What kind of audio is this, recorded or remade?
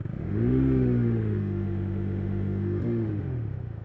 remade